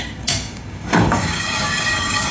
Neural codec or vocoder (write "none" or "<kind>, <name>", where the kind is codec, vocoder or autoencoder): codec, DAC